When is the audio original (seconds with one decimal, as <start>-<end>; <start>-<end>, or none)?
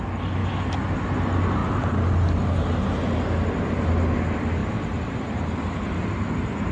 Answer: 0.0-6.7